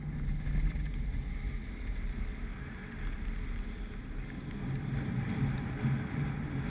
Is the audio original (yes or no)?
yes